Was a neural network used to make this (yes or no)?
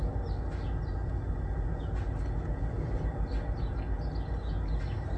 no